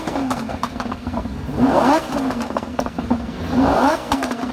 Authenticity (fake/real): fake